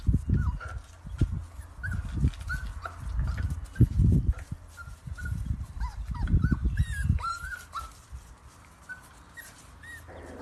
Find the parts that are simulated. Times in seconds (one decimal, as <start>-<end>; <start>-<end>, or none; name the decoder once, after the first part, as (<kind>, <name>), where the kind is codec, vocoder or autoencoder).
5.0-7.8 (vocoder, BigVGAN v2)